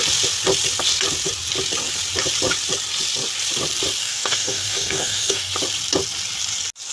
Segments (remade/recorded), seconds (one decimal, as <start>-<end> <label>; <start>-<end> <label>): 0.0-4.0 recorded; 4.0-5.5 remade; 5.5-6.9 recorded